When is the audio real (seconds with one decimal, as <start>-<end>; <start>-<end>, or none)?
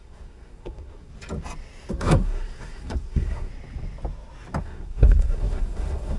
1.1-1.9; 3.5-4.6